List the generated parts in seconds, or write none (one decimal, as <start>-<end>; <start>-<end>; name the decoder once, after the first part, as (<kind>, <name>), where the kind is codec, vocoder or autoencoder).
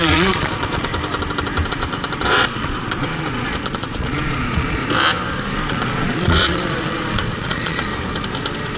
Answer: 0.0-0.9 (vocoder, Vocos); 1.7-4.8; 5.7-7.9